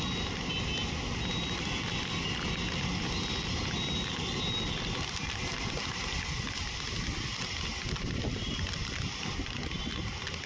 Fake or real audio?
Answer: real